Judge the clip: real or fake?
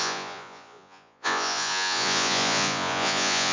fake